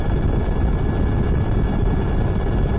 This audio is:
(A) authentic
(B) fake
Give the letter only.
A